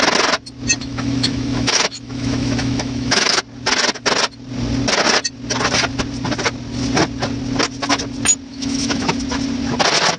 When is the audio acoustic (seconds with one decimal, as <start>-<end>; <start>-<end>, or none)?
0.0-0.8; 3.4-8.5; 9.1-10.2